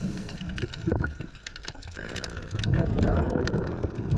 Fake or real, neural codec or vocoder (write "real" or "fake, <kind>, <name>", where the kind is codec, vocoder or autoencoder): fake, codec, SNAC